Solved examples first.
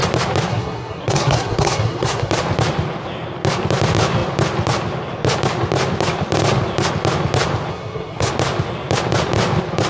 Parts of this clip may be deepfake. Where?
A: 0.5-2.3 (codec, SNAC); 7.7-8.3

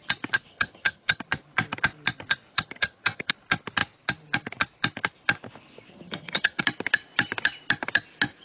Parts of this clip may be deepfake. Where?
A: 0.5-1.2 (vocoder, HiFi-GAN); 2.5-3.3; 5.9-6.6

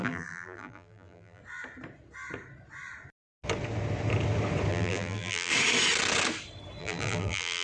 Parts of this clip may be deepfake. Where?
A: 0.0-1.4 (vocoder, BigVGAN v2); 4.7-5.5; 6.8-7.6

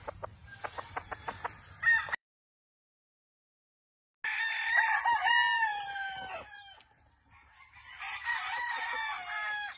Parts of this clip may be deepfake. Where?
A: 0.4-3.2 (vocoder, BigVGAN v2); 5.7-7.1